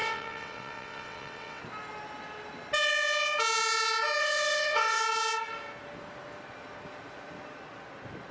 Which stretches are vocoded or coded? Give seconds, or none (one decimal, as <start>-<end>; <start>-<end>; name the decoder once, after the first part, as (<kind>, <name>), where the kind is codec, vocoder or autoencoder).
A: 0.0-1.6 (vocoder, WaveNeXt); 4.2-5.0

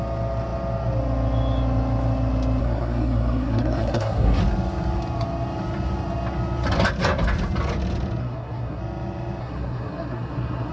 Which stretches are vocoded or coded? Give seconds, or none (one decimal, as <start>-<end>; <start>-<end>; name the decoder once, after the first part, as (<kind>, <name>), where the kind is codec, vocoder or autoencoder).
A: 2.6-4.4 (codec, SNAC); 8.2-8.8; 9.4-10.7

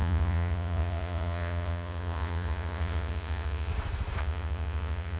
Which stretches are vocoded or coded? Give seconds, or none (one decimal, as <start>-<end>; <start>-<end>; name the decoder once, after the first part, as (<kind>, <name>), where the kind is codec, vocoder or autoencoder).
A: 0.0-3.7 (vocoder, Vocos); 4.2-5.2

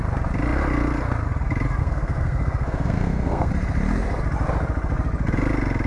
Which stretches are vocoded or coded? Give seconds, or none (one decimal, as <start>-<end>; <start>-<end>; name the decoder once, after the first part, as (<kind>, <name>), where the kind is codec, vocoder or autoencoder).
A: 1.8-3.5 (codec, SNAC)

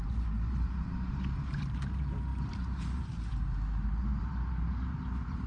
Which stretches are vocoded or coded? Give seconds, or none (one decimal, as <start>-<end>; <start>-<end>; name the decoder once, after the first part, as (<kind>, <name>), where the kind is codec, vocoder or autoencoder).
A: 0.0-5.5 (vocoder, BigVGAN v2)

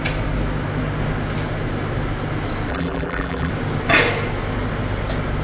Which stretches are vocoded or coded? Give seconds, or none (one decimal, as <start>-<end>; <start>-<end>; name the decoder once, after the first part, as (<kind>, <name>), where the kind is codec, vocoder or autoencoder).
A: 2.7-3.5 (vocoder, BigVGAN v2)

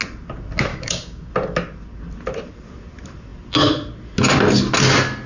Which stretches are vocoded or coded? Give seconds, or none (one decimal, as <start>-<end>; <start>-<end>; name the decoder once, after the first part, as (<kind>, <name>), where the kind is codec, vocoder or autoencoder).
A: 0.7-1.3 (codec, DAC)

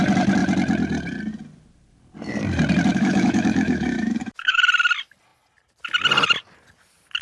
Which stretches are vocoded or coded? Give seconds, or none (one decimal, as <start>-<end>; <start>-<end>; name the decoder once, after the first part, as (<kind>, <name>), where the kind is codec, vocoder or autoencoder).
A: 2.9-4.6 (autoencoder, DAC-VAE)